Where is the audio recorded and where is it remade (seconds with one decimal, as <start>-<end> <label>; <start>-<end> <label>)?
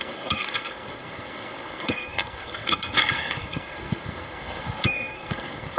0.0-5.8 remade